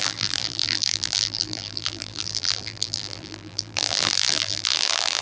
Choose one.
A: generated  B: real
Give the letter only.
A